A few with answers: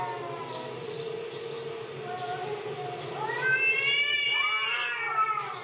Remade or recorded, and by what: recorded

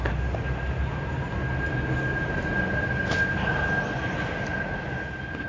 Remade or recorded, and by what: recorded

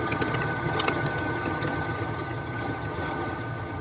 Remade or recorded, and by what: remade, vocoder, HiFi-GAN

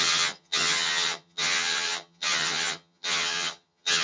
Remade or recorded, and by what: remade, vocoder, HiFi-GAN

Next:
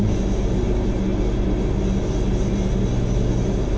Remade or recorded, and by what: recorded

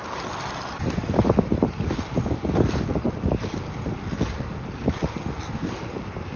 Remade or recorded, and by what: recorded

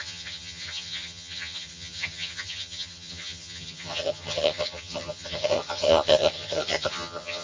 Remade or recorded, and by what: remade, vocoder, HiFi-GAN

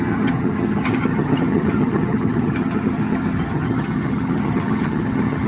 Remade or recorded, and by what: remade, vocoder, HiFi-GAN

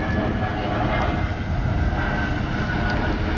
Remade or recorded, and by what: recorded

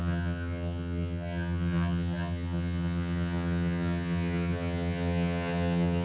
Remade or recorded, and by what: remade, vocoder, HiFi-GAN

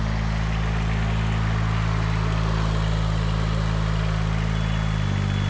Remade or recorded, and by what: recorded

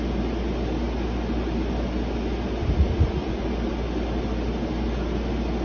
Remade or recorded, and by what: recorded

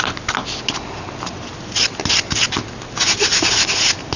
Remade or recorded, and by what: recorded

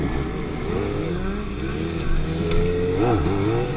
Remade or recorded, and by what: recorded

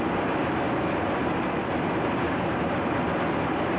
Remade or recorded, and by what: recorded